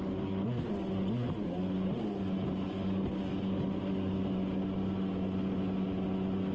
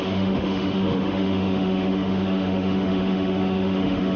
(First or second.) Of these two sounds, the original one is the first